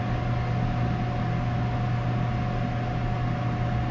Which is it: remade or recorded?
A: recorded